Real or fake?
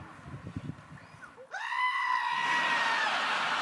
real